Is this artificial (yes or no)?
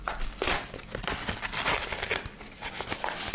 no